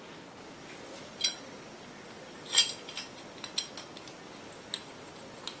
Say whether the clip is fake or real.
real